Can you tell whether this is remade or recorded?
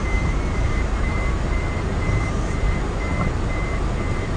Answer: remade